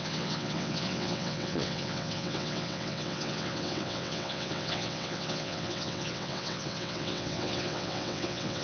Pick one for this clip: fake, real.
fake